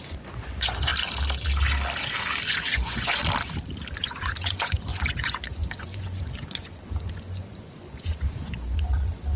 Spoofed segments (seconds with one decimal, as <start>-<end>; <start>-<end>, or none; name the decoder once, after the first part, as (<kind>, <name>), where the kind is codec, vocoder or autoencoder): 0.0-0.9 (vocoder, Vocos); 2.4-3.2; 4.0-9.4